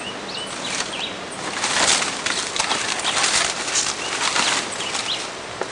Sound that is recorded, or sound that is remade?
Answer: recorded